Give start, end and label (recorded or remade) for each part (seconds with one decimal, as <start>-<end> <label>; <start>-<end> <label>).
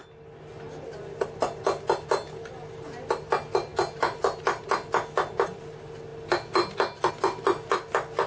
0.0-8.3 recorded